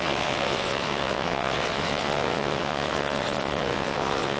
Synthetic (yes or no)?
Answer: yes